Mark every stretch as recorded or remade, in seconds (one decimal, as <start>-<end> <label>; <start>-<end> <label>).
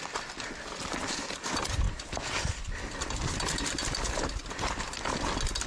0.0-1.0 recorded; 1.0-4.4 remade; 4.4-5.7 recorded